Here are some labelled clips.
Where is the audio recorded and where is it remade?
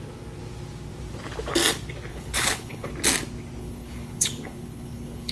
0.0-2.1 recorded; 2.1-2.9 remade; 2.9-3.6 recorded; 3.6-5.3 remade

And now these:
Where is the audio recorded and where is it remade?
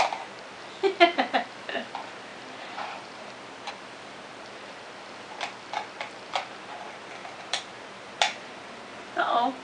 0.0-2.3 recorded; 2.3-3.7 remade; 3.7-7.2 recorded; 7.2-8.6 remade; 8.6-9.6 recorded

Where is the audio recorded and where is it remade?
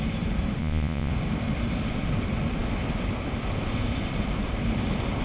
0.0-0.6 recorded; 0.6-1.1 remade; 1.1-5.2 recorded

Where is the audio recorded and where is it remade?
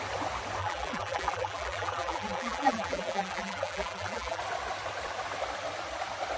0.0-0.6 recorded; 0.6-4.4 remade; 4.4-6.4 recorded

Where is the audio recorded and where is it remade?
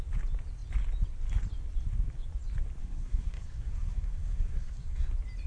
0.0-2.8 recorded; 2.8-5.1 remade; 5.1-5.5 recorded